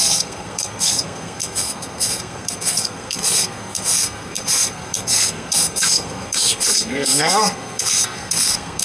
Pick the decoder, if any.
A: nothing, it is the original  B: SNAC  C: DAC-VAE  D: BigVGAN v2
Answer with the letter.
B